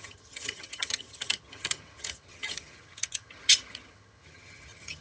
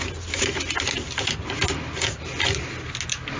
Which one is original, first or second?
second